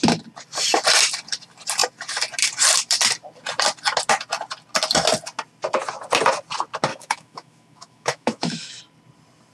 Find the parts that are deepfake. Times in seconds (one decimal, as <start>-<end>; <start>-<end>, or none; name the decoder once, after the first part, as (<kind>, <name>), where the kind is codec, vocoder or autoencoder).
6.9-8.8 (autoencoder, DAC-VAE)